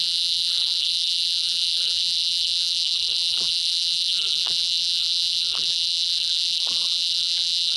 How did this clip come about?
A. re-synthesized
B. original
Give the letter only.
A